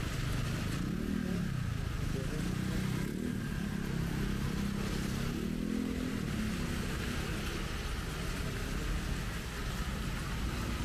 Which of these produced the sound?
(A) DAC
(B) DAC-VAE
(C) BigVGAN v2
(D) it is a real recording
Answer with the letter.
D